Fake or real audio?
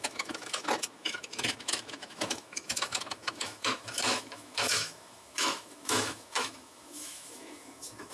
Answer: fake